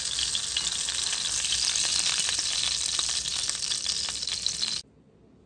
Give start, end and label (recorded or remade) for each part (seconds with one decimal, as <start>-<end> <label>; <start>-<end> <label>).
0.0-5.5 recorded